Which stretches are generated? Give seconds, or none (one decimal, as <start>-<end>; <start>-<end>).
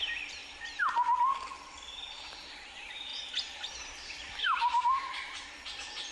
0.0-0.4; 2.2-3.1; 4.4-6.1